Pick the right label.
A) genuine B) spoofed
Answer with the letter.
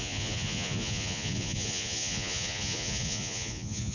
B